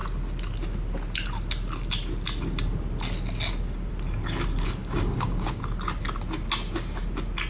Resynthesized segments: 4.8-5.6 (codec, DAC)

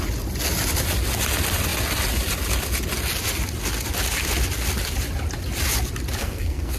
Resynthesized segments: 6.2-6.8 (codec, SNAC)

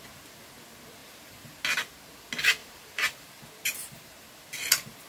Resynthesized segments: 1.0-1.6 (vocoder, BigVGAN v2); 2.6-3.4; 3.8-4.4

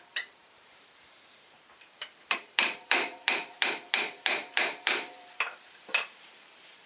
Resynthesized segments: 0.0-6.9 (vocoder, BigVGAN v2)

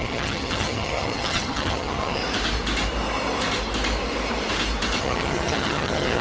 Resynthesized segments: 0.0-2.2 (vocoder, HiFi-GAN); 5.0-6.2